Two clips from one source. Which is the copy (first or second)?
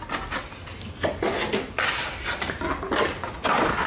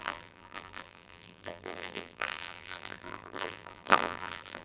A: second